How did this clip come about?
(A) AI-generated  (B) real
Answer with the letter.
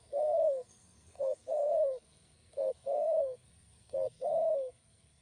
A